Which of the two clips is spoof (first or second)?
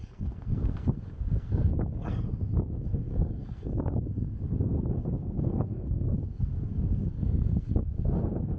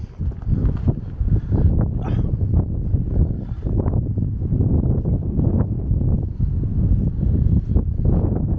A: first